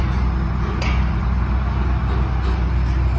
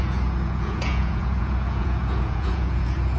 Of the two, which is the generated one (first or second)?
second